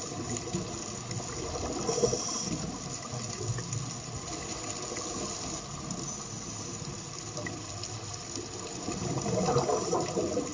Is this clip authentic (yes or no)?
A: yes